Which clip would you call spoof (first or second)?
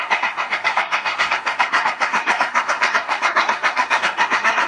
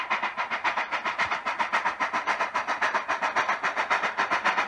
first